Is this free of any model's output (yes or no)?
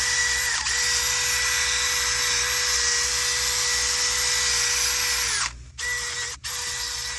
yes